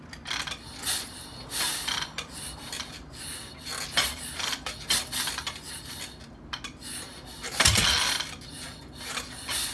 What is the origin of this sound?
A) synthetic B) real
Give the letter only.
B